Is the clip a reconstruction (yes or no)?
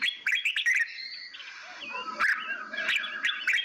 no